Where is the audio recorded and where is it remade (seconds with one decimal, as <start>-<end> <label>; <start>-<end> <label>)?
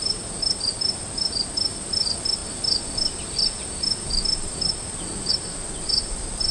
0.0-6.5 recorded